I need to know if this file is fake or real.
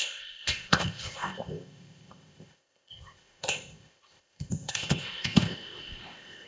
fake